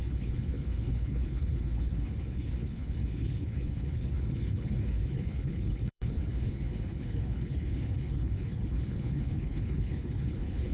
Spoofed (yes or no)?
yes